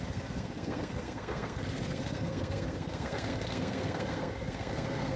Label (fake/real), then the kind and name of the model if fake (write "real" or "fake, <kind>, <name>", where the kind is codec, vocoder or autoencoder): fake, codec, SNAC